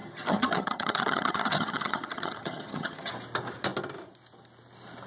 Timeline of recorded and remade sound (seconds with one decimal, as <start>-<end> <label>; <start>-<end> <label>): 0.0-3.1 remade; 3.1-5.1 recorded